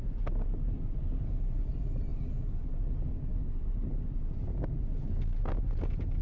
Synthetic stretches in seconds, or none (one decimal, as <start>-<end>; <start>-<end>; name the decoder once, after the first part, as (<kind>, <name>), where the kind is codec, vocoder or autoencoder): none